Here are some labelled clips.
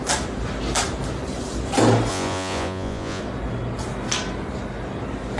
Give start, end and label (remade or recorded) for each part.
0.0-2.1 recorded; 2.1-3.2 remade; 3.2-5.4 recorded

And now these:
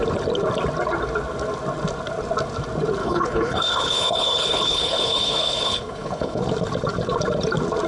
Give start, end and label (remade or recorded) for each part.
0.0-3.0 recorded; 3.0-6.4 remade; 6.4-7.9 recorded

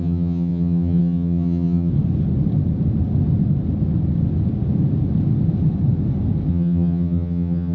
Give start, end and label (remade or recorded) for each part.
0.0-1.9 remade; 1.9-6.5 recorded; 6.5-7.7 remade

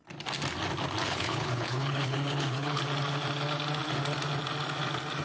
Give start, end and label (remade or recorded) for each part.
0.0-1.0 recorded; 1.0-2.8 remade; 2.8-5.2 recorded